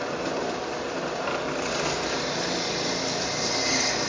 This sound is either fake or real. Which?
real